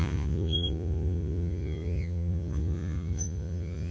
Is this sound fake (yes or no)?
yes